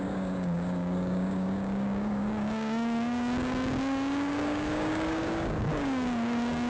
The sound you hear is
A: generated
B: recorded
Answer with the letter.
A